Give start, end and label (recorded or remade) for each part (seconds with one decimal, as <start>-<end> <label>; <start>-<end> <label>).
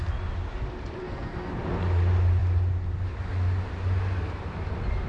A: 0.0-1.0 recorded; 1.0-1.5 remade; 1.5-5.1 recorded